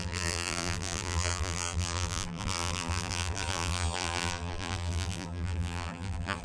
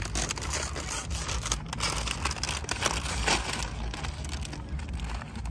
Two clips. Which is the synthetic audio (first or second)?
first